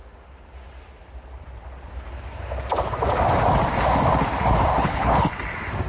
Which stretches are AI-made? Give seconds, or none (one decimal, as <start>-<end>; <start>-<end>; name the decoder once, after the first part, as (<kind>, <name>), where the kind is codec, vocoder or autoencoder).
4.7-5.3 (codec, HILCodec)

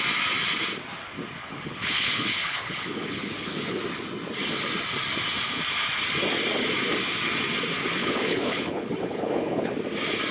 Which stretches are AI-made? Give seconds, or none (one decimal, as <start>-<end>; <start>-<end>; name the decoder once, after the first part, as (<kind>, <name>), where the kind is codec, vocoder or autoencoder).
1.4-3.8 (codec, HILCodec); 8.0-9.7